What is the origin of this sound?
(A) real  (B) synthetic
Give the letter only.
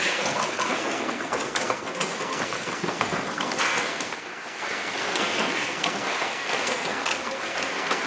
B